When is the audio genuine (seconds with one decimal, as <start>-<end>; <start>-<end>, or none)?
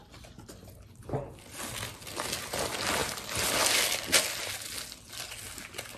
0.0-6.0